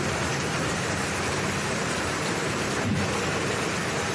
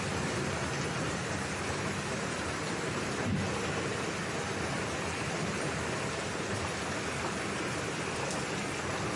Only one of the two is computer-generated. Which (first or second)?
first